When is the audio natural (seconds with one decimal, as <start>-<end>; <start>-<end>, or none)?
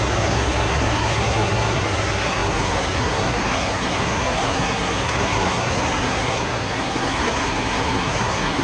none